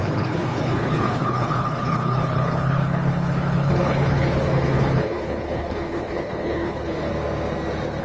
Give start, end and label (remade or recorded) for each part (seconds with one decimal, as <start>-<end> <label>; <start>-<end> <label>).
0.0-7.1 remade; 7.1-8.0 recorded